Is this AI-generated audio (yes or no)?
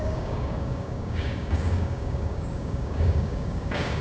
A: yes